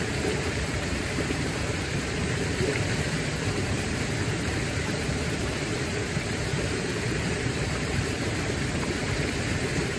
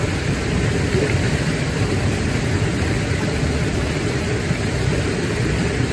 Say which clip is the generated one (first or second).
first